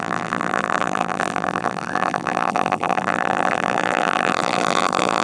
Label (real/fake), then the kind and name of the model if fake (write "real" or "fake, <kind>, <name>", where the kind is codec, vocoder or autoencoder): fake, vocoder, BigVGAN v2